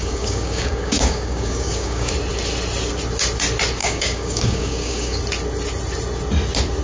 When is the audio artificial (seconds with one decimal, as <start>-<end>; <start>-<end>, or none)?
0.0-2.1; 3.8-5.2